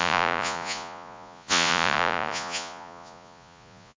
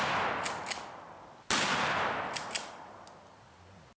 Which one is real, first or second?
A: second